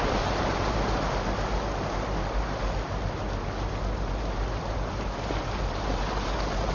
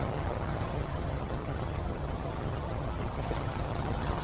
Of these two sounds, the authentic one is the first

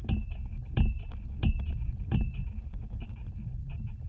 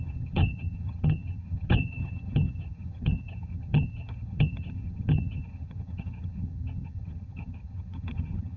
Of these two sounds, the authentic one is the first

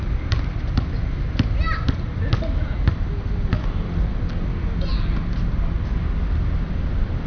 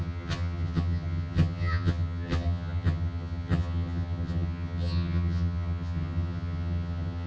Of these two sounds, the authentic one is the first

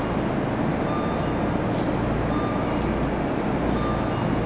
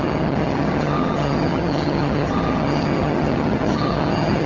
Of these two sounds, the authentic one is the first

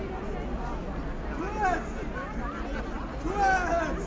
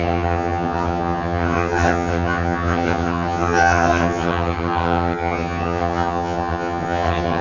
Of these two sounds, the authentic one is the first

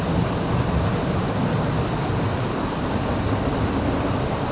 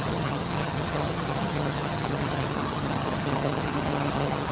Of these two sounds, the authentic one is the first